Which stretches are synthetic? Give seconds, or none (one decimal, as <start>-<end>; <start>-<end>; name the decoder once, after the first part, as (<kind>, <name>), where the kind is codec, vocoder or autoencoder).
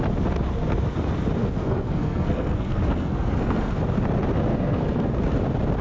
1.4-3.7 (codec, SNAC); 4.5-5.2